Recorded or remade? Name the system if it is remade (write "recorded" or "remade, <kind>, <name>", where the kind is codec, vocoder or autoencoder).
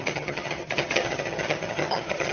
remade, vocoder, HiFi-GAN